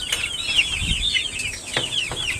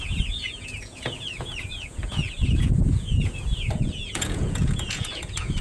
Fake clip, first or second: second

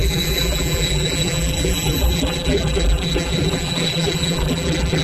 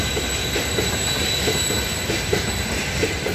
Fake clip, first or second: first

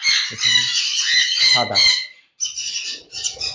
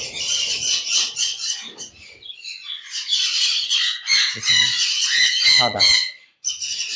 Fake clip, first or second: second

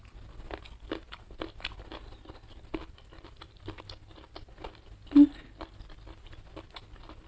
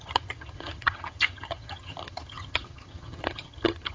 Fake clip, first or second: second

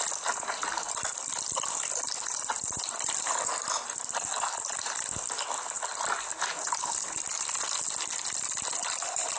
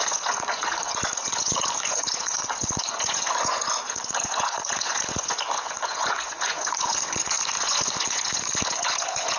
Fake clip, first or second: second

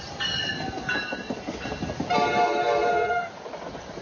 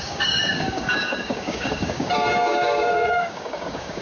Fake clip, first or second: second